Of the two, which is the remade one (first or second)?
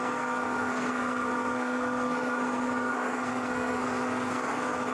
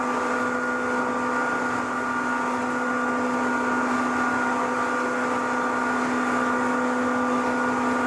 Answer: first